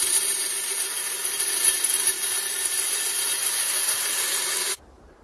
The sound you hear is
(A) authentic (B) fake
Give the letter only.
B